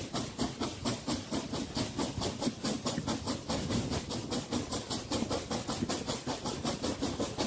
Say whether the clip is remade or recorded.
recorded